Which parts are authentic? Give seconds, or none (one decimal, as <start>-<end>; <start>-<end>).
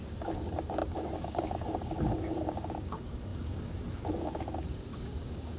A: none